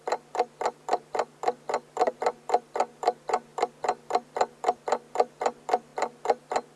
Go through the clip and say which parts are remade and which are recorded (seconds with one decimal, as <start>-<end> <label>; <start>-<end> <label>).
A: 0.0-1.4 remade; 1.4-2.1 recorded; 2.1-5.9 remade; 5.9-6.8 recorded